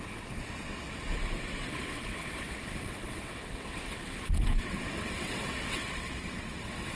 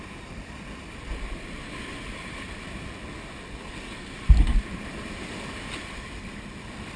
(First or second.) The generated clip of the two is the first